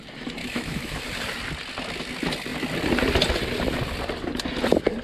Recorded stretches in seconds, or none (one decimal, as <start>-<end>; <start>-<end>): 0.0-0.4; 1.0-5.0